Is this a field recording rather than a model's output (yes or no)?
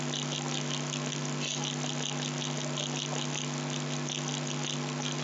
yes